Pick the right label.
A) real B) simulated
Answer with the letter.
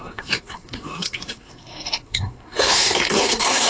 B